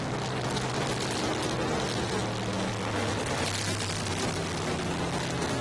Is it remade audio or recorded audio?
recorded